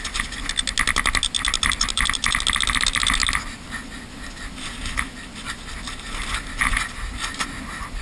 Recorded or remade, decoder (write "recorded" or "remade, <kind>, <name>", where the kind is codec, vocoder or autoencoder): recorded